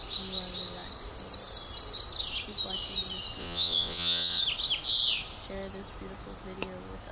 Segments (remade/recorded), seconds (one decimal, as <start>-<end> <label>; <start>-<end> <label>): 0.0-3.4 recorded; 3.4-4.4 remade; 4.4-7.1 recorded